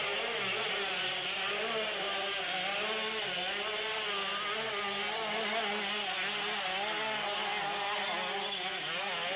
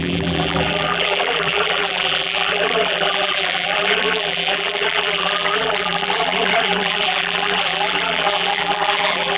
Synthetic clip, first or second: second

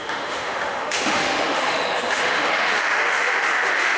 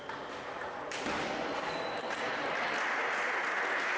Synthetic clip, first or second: first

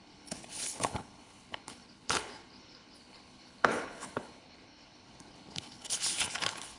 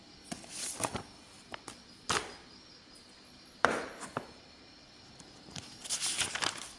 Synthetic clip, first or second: first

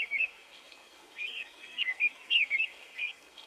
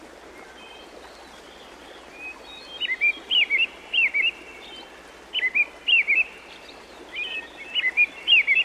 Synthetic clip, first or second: first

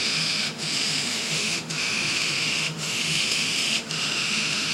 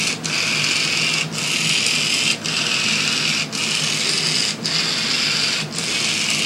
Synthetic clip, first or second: first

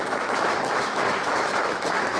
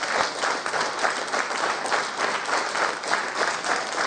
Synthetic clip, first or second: first